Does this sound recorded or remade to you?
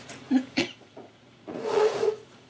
remade